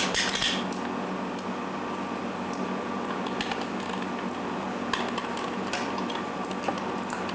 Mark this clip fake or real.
real